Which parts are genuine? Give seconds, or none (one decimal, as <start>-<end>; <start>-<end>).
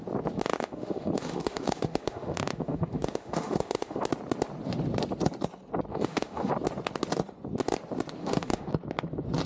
0.0-0.5; 4.0-5.9; 6.5-8.2; 8.7-9.5